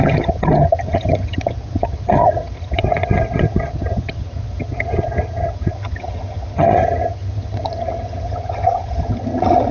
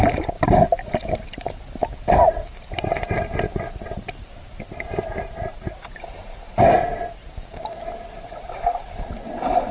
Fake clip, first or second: first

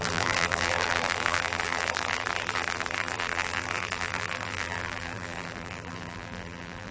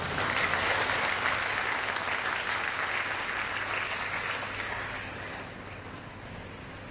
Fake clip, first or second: first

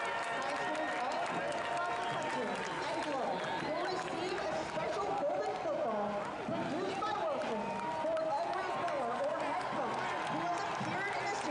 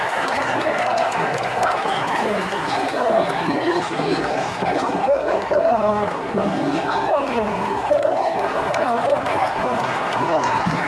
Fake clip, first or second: second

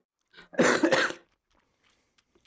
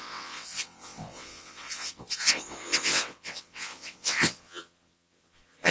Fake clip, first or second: second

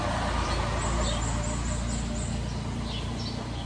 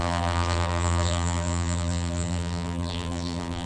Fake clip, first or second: second